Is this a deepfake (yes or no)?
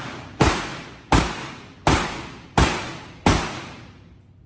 no